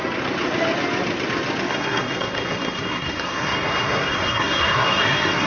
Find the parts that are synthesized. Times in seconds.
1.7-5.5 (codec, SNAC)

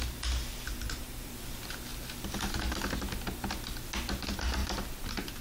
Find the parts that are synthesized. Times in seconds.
0.4-1.3 (vocoder, BigVGAN v2); 4.6-5.4